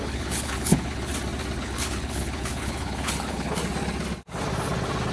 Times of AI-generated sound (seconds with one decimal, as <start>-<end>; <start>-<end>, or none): 0.0-1.1; 1.6-3.6